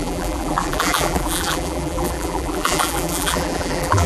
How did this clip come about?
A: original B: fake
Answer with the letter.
B